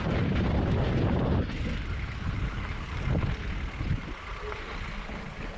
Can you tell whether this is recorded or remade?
recorded